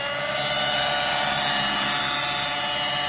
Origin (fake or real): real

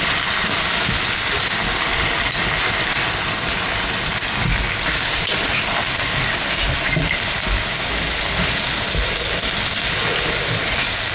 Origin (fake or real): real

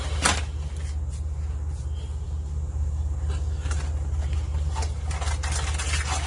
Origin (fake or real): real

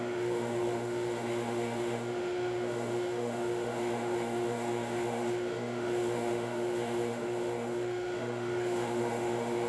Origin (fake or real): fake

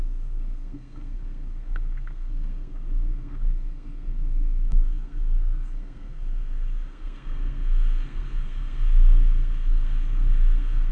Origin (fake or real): fake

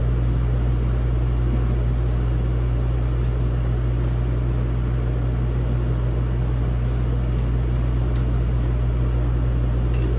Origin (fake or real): real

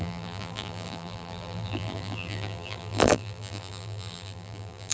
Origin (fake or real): fake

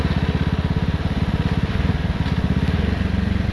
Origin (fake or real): real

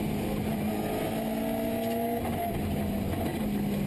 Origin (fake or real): real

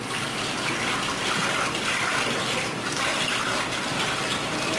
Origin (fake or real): fake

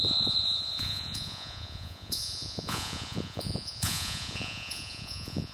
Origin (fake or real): fake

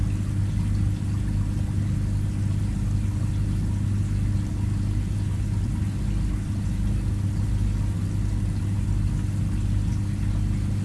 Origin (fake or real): real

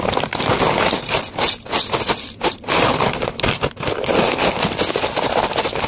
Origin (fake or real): real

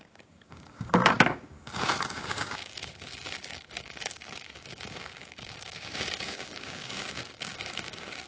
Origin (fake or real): fake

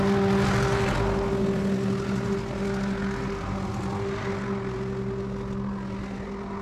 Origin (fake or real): real